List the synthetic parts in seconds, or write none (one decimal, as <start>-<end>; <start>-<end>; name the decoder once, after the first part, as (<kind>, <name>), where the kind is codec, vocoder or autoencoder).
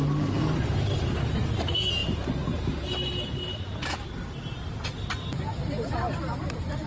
none